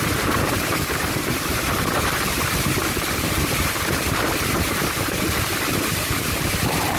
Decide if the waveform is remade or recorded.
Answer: remade